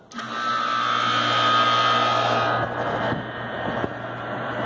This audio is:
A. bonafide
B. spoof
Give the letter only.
A